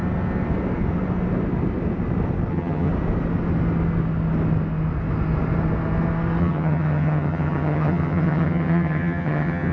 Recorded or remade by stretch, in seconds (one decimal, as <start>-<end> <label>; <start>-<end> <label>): 0.0-2.5 recorded; 2.5-2.9 remade; 2.9-6.4 recorded; 6.4-9.7 remade